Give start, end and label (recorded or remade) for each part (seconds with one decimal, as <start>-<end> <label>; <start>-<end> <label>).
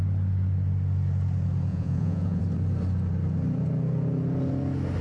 0.0-1.7 recorded; 1.7-2.4 remade; 2.4-5.0 recorded